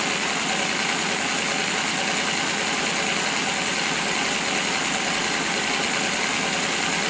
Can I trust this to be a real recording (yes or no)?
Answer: yes